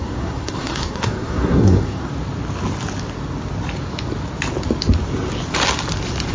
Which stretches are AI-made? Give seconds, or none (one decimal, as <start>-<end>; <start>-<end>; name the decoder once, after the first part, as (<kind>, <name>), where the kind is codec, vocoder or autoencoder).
0.0-2.1 (codec, SNAC)